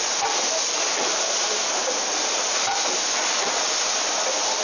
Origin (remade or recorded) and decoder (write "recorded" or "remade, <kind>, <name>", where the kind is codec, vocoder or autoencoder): remade, vocoder, BigVGAN v2